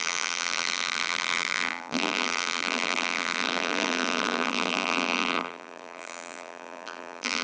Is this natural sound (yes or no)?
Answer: no